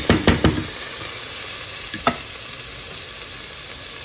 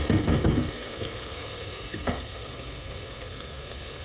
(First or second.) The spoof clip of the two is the second